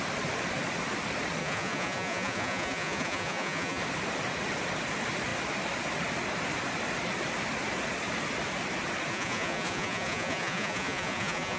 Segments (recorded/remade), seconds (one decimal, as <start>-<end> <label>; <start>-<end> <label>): 0.0-1.4 recorded; 1.4-3.8 remade; 3.8-9.1 recorded; 9.1-11.6 remade